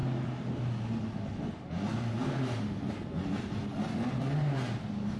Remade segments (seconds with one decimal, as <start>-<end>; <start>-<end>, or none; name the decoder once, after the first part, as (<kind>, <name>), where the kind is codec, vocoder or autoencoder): none